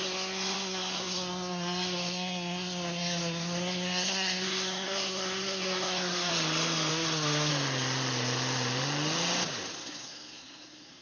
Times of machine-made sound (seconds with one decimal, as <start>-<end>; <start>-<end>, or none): 0.0-6.3; 6.9-7.5; 9.8-11.0